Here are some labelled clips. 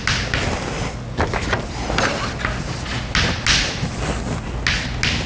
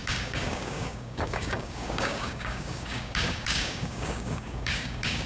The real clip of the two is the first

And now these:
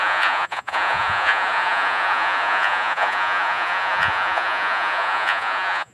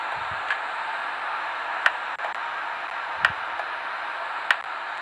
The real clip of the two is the second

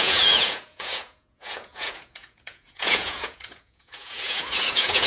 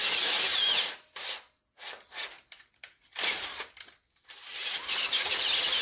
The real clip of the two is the second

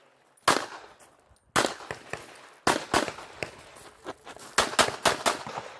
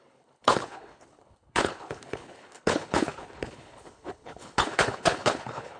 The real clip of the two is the first